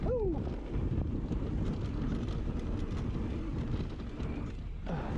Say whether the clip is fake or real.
real